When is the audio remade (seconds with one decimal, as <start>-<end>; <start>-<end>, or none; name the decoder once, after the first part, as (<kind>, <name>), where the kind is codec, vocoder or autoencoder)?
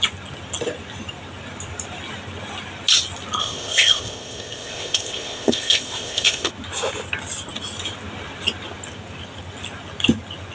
3.4-6.5 (codec, ZipCodec)